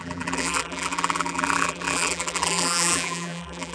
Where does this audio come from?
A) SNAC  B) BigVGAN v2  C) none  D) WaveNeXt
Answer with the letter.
B